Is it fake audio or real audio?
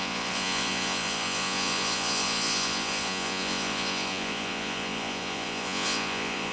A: fake